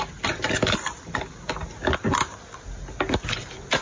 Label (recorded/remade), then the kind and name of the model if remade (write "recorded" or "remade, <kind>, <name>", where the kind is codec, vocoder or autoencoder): recorded